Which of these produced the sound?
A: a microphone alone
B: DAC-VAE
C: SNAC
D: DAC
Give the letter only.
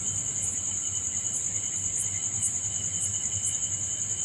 A